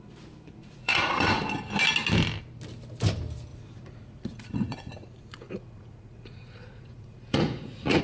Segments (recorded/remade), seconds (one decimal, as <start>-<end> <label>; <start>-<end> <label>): 0.0-0.6 recorded; 0.6-1.4 remade; 1.4-3.5 recorded; 3.5-8.0 remade